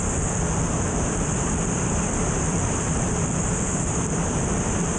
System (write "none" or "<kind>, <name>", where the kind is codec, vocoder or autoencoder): vocoder, BigVGAN v2